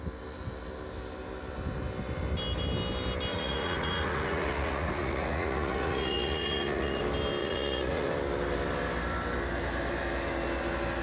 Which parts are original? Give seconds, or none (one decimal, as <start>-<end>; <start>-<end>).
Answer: 0.0-3.3; 7.0-7.4; 8.1-11.0